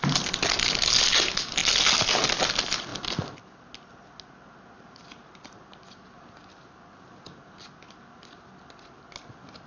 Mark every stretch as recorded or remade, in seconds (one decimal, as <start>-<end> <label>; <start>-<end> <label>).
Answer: 0.0-1.6 recorded; 1.6-2.4 remade; 2.4-2.9 recorded; 2.9-3.7 remade; 3.7-9.7 recorded